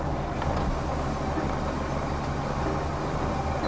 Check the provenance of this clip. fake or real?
real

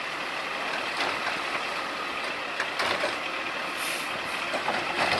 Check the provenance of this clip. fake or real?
real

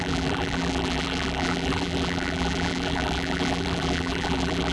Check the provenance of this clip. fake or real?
fake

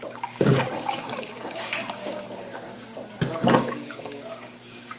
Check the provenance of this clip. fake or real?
fake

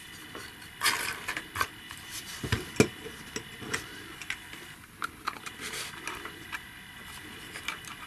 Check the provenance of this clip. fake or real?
real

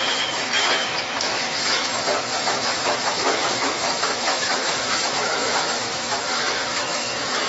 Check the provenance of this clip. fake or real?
fake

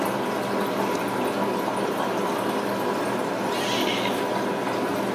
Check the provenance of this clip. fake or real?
real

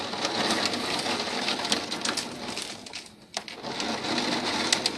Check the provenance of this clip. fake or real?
real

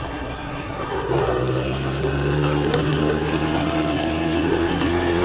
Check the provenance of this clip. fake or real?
fake